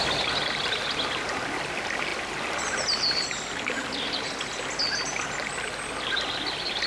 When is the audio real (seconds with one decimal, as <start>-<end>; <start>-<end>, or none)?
0.0-6.9